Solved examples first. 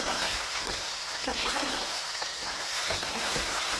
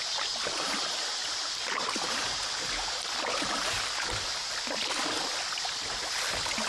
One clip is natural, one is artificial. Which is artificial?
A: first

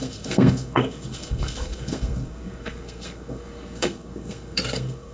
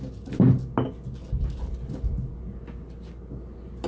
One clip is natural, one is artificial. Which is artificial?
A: first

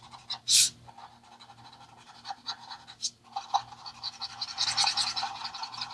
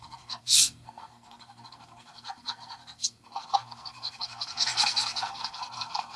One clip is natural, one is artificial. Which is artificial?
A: second